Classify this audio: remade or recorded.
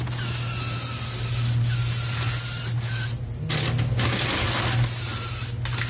recorded